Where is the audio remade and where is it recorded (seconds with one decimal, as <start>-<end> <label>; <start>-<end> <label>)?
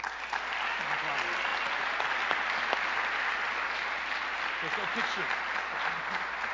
0.0-6.5 recorded